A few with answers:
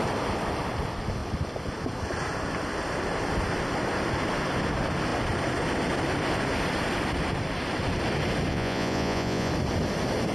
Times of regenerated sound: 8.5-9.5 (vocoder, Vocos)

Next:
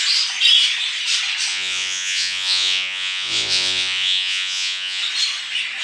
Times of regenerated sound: 1.5-5.0 (vocoder, Vocos)

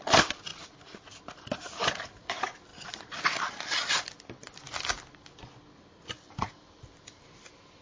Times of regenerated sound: none

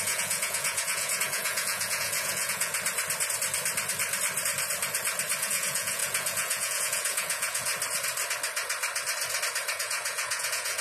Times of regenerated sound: 0.0-2.7 (vocoder, Vocos); 5.4-7.7; 9.7-10.8

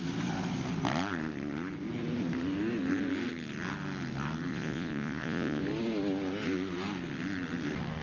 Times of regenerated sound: 4.5-5.6 (vocoder, Vocos)